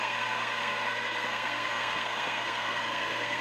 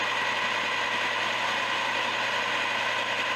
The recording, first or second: second